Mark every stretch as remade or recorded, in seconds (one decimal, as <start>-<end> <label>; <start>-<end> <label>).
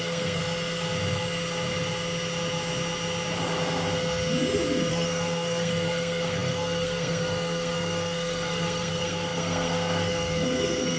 0.0-0.4 remade; 0.4-4.9 recorded; 4.9-11.0 remade